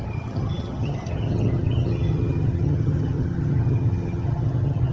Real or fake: fake